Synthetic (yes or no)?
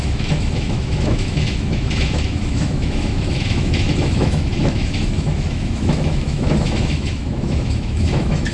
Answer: yes